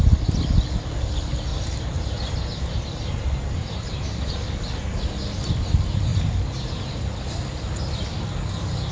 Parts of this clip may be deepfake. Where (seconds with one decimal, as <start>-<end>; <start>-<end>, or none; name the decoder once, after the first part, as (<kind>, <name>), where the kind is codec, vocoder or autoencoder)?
1.5-4.3 (vocoder, BigVGAN v2); 6.1-7.2